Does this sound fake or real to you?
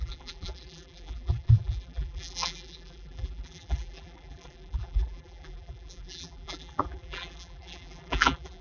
fake